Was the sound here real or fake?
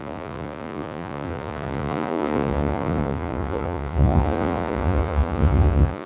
fake